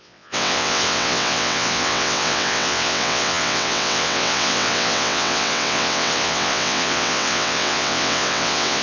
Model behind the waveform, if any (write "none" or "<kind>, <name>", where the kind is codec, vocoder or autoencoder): vocoder, WaveNeXt